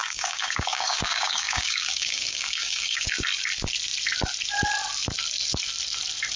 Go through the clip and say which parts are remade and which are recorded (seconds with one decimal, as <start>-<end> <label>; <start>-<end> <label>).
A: 0.0-3.1 remade; 3.1-6.4 recorded